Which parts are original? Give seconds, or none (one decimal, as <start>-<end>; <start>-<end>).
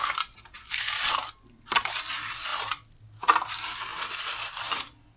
0.0-5.2